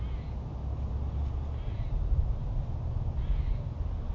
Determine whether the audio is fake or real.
real